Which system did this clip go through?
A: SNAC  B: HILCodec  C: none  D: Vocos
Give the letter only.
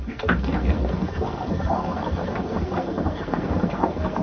A